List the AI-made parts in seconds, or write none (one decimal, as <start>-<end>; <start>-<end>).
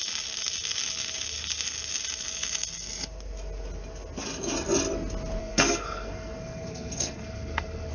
5.4-7.9